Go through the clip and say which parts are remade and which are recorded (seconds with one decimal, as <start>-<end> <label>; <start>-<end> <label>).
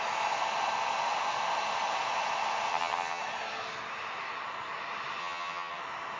0.0-2.7 recorded; 2.7-3.2 remade; 3.2-5.2 recorded; 5.2-5.8 remade; 5.8-6.2 recorded